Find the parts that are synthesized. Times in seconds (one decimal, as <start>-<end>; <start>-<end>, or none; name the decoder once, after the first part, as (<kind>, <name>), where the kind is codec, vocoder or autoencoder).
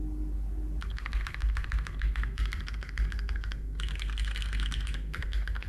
0.8-5.7 (codec, SNAC)